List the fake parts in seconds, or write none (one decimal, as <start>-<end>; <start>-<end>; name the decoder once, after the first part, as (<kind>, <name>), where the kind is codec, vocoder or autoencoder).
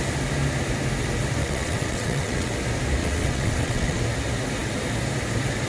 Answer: 1.4-2.5 (vocoder, WaveNeXt); 3.0-4.0